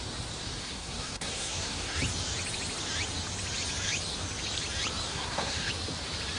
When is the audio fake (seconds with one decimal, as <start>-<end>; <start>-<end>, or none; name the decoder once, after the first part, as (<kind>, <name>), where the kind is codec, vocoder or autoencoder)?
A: 0.6-2.0 (codec, SNAC); 5.1-5.7